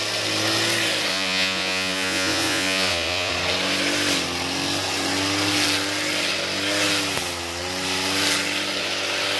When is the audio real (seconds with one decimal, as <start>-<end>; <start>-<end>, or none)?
0.0-1.1; 3.3-9.4